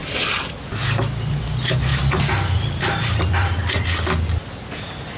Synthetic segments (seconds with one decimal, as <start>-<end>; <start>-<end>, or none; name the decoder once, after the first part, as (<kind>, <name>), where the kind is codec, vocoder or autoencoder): 0.0-1.4 (vocoder, BigVGAN v2); 1.9-3.5

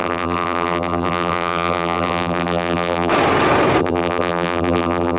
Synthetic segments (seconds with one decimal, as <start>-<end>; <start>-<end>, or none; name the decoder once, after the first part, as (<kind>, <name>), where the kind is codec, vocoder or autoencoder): 0.0-3.1 (vocoder, BigVGAN v2); 3.8-5.2